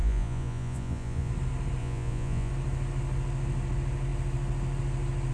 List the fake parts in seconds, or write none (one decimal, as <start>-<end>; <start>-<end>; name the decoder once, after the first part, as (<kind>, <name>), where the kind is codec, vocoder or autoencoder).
0.0-1.3 (vocoder, Vocos); 1.8-2.5